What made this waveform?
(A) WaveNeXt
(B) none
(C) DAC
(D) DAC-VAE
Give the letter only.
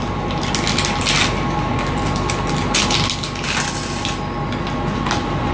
B